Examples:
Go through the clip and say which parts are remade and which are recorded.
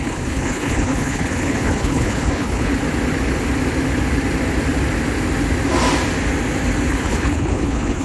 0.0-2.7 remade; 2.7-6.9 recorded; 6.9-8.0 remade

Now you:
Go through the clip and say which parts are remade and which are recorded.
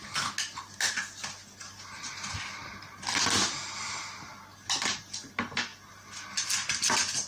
0.0-7.3 recorded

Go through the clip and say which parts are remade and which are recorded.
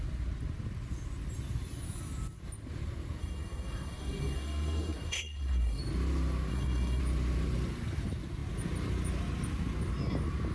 0.0-3.2 recorded; 3.2-5.8 remade; 5.8-6.5 recorded; 6.5-7.0 remade; 7.0-10.5 recorded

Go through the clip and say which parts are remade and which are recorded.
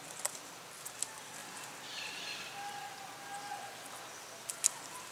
0.0-5.1 recorded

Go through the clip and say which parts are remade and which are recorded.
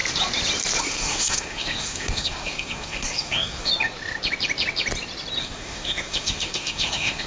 0.0-0.8 recorded; 0.8-3.7 remade; 3.7-5.4 recorded; 5.4-7.3 remade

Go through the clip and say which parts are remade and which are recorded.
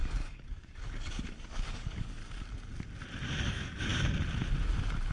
0.0-2.2 remade; 2.2-3.4 recorded; 3.4-3.9 remade; 3.9-5.1 recorded